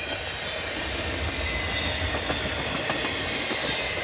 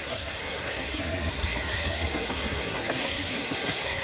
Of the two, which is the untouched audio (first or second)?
first